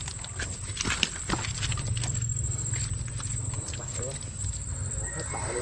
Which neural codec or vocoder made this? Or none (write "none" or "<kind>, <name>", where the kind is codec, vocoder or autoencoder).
none